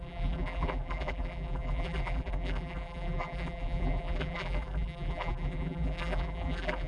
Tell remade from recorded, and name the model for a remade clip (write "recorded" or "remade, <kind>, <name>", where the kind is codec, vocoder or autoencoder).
remade, vocoder, BigVGAN v2